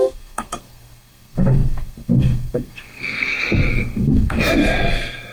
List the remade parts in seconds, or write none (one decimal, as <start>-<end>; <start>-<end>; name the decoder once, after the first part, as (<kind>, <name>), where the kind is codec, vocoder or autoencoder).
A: 0.0-5.3 (codec, SNAC)